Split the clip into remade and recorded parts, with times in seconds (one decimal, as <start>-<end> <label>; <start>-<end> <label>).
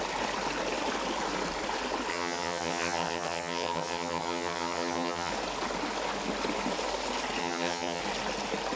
0.0-2.1 recorded; 2.1-5.3 remade; 5.3-7.4 recorded; 7.4-8.0 remade; 8.0-8.8 recorded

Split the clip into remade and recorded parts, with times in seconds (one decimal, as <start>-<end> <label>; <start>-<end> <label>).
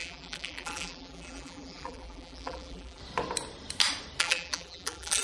0.0-3.0 remade; 3.0-4.2 recorded; 4.2-5.2 remade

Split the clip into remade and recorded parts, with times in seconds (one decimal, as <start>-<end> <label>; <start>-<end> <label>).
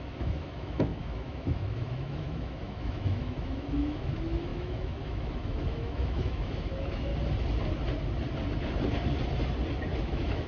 0.0-7.1 remade; 7.1-10.0 recorded; 10.0-10.5 remade